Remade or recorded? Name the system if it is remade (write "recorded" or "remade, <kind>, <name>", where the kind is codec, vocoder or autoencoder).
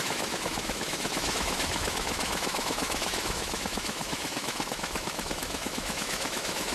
remade, autoencoder, DAC-VAE